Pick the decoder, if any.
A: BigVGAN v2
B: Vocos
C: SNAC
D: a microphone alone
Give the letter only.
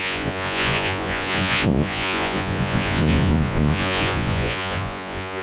B